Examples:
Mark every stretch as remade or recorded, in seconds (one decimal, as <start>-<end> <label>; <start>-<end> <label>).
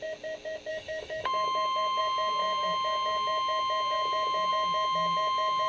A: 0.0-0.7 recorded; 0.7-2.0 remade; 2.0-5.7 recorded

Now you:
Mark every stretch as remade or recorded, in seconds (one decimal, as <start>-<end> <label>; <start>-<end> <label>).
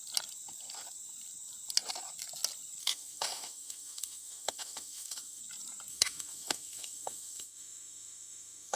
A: 0.0-2.8 recorded; 2.8-5.4 remade; 5.4-5.9 recorded; 5.9-8.8 remade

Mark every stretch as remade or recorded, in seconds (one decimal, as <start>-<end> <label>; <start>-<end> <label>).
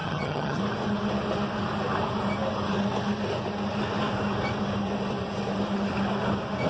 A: 0.0-0.6 remade; 0.6-6.7 recorded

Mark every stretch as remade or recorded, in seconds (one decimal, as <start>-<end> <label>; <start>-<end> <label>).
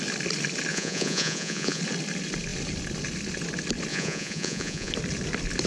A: 0.0-0.7 recorded; 0.7-1.8 remade; 1.8-3.9 recorded; 3.9-4.9 remade; 4.9-5.7 recorded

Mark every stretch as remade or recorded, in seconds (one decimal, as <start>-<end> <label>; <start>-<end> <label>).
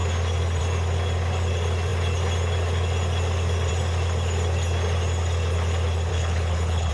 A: 0.0-6.1 recorded; 6.1-6.9 remade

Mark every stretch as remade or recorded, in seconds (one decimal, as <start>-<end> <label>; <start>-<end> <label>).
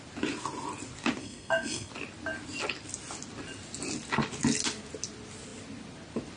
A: 0.0-1.2 recorded; 1.2-1.9 remade; 1.9-6.4 recorded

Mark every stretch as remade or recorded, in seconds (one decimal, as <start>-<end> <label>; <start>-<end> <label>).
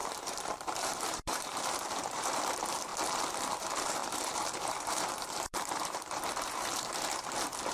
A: 0.0-2.9 remade; 2.9-3.6 recorded; 3.6-7.7 remade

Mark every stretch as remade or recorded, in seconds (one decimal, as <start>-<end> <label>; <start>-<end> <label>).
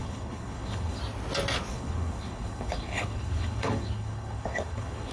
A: 0.0-1.0 remade; 1.0-1.7 recorded; 1.7-5.1 remade